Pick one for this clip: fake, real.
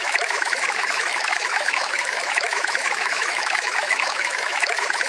fake